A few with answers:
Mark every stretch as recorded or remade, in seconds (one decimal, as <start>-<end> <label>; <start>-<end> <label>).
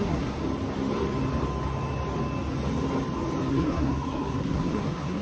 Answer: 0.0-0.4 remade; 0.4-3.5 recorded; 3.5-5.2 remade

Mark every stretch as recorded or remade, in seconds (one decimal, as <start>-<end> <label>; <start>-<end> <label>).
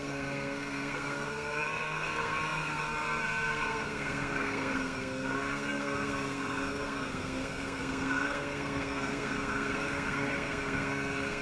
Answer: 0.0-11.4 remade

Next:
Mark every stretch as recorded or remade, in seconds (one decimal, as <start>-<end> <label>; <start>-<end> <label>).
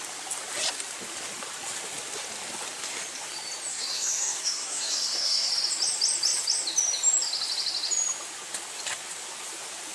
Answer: 0.0-3.7 recorded; 3.7-5.5 remade; 5.5-9.9 recorded